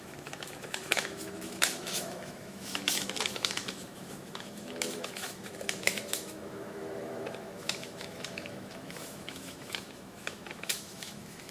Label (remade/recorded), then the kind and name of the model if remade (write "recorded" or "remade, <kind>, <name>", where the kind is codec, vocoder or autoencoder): remade, autoencoder, DAC-VAE